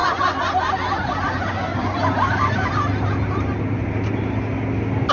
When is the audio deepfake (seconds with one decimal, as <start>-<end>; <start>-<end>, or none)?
0.0-1.1; 1.7-2.7